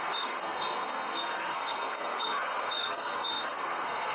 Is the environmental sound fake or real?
fake